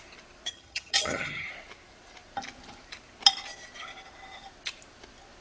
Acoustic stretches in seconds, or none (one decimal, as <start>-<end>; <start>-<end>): 0.0-0.5; 1.5-5.4